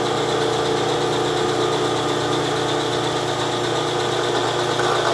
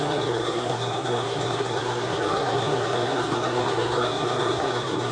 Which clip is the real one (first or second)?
first